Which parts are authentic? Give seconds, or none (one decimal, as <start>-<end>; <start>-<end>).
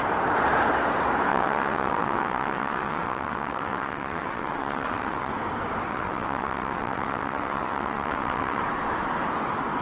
0.0-1.3; 5.3-5.9; 8.6-9.8